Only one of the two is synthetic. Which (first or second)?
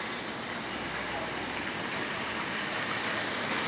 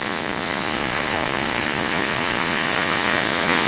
second